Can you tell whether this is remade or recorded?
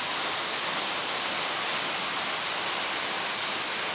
recorded